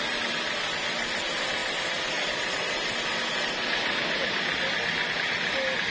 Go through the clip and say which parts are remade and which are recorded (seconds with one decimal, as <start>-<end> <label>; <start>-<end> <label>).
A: 0.0-5.9 recorded